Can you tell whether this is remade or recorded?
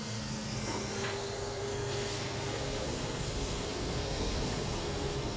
remade